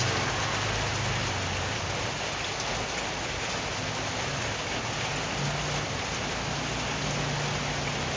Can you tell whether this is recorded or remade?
recorded